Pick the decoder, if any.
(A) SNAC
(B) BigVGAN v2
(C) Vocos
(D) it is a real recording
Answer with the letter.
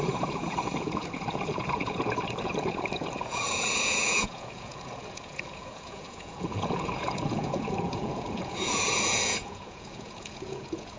C